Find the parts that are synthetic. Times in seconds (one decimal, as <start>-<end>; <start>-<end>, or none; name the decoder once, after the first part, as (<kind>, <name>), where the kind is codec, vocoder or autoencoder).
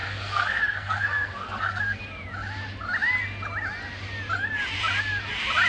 0.0-2.0 (codec, SNAC)